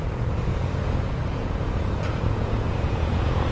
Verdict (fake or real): fake